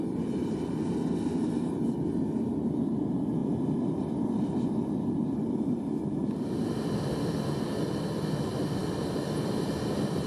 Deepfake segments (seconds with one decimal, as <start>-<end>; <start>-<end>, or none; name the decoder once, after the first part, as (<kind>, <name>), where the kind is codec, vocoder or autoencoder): 8.8-10.3 (vocoder, BigVGAN v2)